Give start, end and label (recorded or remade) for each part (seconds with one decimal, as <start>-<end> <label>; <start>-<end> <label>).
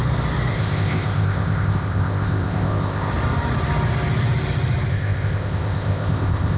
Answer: 0.0-0.5 recorded; 0.5-3.1 remade; 3.1-4.9 recorded; 4.9-6.6 remade